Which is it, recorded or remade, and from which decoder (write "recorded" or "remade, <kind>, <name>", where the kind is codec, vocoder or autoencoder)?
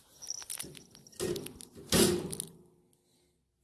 recorded